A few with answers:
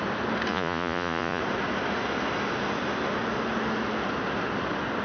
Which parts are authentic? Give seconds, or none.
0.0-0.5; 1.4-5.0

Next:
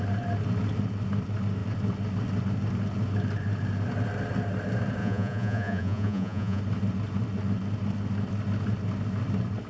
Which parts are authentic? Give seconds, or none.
0.0-5.0; 6.6-9.7

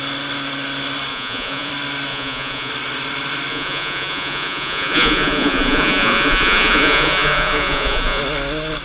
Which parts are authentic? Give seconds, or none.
0.0-1.1; 1.7-2.1; 2.7-3.5; 8.2-8.8

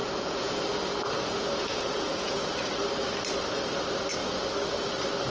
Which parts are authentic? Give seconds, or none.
0.6-1.6; 2.5-5.3

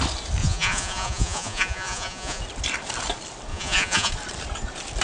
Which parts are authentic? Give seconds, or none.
0.0-0.4; 2.4-3.5; 4.1-5.0

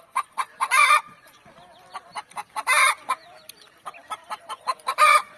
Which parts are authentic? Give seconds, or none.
1.5-2.8; 3.2-4.5